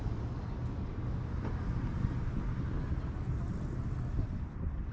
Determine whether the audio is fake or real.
real